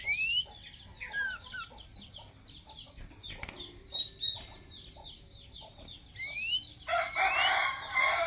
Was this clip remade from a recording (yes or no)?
no